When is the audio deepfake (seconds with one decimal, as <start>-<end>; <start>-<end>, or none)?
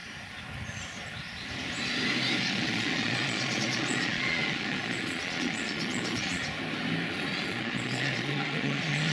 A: 2.4-6.4; 7.1-9.1